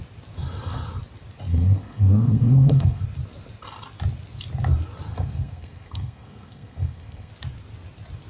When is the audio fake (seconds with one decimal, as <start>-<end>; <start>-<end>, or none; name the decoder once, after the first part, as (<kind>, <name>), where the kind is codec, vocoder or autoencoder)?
1.5-3.0 (codec, SNAC); 5.1-7.3